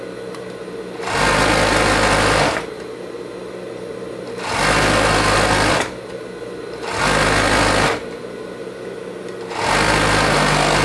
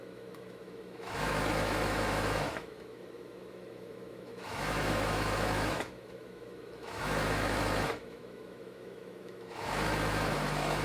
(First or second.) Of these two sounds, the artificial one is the second